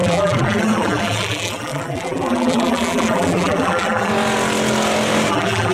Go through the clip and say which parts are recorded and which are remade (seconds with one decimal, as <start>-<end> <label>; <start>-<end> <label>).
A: 0.0-4.1 remade; 4.1-5.3 recorded; 5.3-5.7 remade